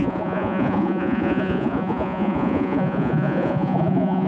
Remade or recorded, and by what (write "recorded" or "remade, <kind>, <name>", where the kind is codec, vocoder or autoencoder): remade, vocoder, Vocos